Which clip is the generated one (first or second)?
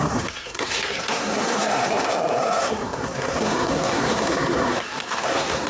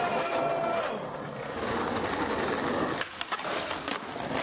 first